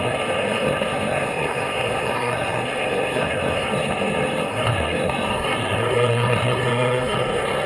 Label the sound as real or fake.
fake